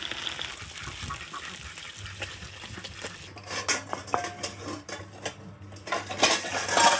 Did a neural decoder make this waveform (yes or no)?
no